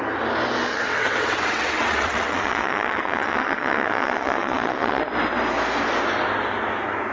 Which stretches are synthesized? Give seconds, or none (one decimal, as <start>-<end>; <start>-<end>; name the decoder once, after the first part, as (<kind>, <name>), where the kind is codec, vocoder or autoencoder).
0.7-5.0 (vocoder, WaveNeXt)